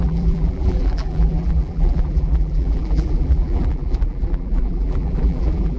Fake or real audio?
fake